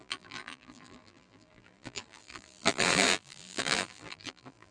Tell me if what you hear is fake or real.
fake